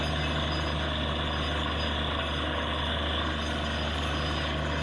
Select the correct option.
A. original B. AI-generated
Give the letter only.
A